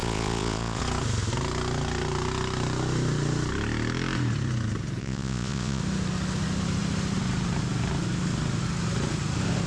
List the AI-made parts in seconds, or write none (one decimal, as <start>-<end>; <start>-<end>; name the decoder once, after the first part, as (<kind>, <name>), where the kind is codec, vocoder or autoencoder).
0.0-0.8 (vocoder, Vocos); 5.0-5.8